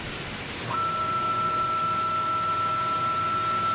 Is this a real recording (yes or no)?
yes